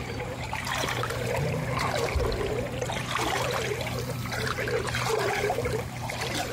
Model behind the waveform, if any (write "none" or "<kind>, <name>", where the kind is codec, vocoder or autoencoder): vocoder, BigVGAN v2